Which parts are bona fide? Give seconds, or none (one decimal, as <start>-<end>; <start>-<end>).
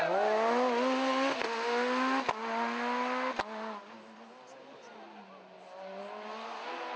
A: 0.0-7.0